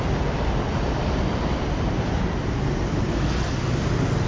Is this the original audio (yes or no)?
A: yes